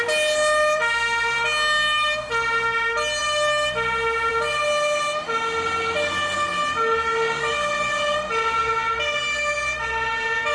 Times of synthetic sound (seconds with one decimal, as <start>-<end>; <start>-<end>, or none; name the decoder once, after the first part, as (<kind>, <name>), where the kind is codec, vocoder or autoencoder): none

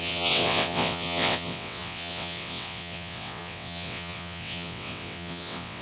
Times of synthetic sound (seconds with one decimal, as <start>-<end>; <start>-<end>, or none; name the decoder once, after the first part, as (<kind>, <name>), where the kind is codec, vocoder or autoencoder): 0.0-5.8 (vocoder, WaveNeXt)

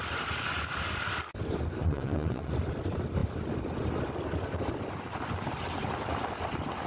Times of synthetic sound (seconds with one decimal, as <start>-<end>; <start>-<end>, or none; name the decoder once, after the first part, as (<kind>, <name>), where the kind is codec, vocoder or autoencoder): 1.8-2.5 (vocoder, WaveNeXt)

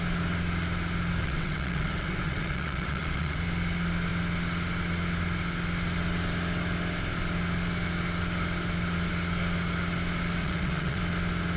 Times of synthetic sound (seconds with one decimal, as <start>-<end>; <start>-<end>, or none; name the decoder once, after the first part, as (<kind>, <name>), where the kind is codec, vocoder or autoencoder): 1.2-3.4 (vocoder, WaveNeXt); 10.4-11.0

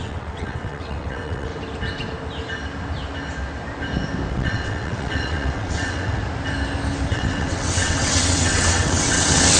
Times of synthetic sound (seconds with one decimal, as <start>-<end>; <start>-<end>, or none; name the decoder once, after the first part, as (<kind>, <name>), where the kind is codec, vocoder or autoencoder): 0.0-1.5 (vocoder, WaveNeXt); 4.3-6.2; 7.1-9.6

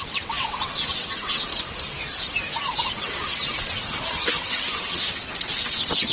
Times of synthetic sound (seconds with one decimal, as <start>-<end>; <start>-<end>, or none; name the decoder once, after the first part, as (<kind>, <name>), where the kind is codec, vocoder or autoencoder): 0.0-1.5 (vocoder, WaveNeXt); 2.9-6.1